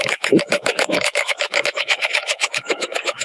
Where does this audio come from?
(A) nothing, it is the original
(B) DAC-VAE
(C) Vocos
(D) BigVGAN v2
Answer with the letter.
B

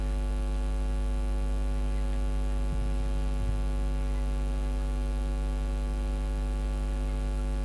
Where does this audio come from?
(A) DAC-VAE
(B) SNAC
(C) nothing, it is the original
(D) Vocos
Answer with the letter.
C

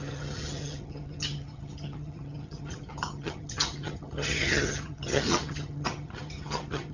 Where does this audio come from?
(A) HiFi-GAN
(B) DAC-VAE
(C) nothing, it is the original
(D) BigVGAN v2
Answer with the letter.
A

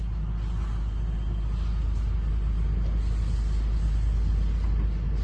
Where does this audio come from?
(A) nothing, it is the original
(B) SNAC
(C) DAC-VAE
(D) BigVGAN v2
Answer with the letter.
A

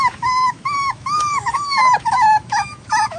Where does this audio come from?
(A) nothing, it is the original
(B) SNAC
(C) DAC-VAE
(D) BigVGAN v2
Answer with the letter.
C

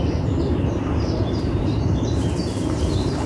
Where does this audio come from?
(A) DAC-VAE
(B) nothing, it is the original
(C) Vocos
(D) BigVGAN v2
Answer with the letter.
D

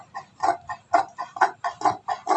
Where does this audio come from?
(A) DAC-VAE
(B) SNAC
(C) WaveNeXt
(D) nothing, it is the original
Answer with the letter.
D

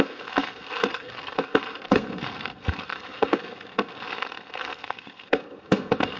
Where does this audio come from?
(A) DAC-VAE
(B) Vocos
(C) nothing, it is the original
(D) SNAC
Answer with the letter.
D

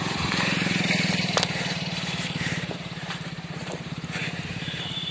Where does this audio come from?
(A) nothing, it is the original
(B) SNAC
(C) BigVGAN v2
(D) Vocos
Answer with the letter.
C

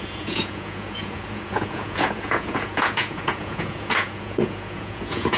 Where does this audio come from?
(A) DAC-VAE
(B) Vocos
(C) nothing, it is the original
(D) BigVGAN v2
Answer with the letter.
B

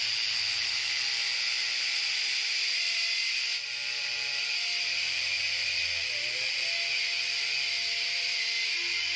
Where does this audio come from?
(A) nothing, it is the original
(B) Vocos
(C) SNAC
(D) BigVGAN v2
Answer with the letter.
A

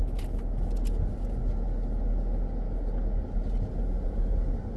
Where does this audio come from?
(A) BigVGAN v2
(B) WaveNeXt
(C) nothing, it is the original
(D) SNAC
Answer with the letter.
C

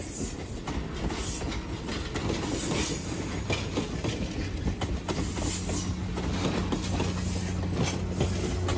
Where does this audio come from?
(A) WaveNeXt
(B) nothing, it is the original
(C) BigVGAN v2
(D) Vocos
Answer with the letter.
B